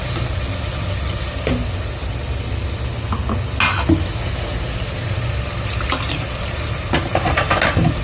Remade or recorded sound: recorded